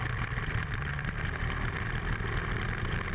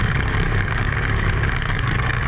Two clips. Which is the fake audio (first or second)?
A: second